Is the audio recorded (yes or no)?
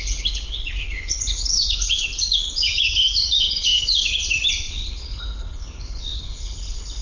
no